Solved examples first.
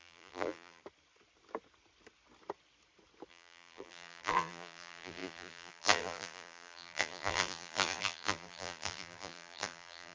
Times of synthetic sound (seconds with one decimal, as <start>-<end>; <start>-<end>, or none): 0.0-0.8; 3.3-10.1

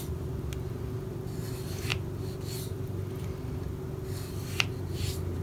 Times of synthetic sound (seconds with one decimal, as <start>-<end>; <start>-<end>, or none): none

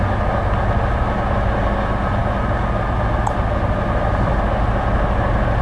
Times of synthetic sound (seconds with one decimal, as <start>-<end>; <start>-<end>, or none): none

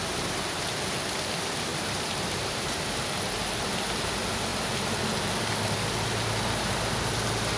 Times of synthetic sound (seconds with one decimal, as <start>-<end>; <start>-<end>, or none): 1.7-3.4

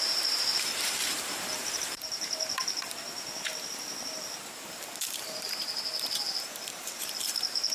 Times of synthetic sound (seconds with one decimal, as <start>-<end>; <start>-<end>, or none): 0.0-7.7